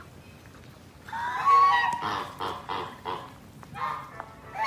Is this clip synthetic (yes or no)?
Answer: no